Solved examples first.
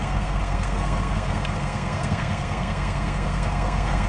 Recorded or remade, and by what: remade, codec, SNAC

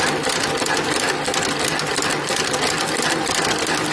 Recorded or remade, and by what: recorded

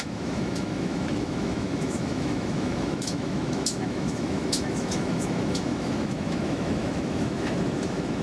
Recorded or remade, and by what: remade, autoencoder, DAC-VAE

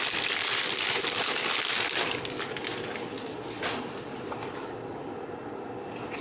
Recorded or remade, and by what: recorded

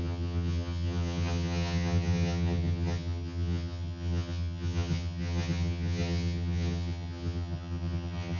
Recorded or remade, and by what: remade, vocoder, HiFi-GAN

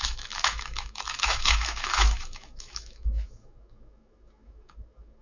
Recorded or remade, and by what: remade, autoencoder, DAC-VAE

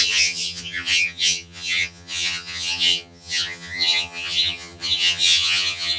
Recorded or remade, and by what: remade, vocoder, HiFi-GAN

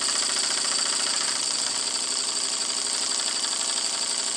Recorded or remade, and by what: recorded